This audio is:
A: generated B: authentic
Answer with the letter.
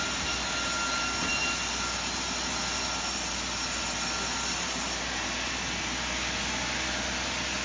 B